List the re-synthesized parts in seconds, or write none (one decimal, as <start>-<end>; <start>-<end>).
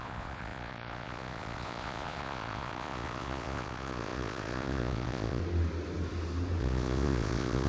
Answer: 0.0-5.4; 6.6-7.7